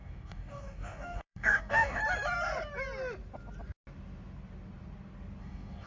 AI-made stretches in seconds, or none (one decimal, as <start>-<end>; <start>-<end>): 0.0-2.0; 5.4-5.9